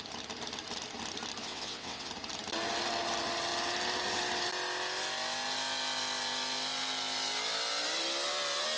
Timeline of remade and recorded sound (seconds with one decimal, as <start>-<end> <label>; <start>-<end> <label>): 0.0-1.4 recorded; 1.4-2.1 remade; 2.1-8.8 recorded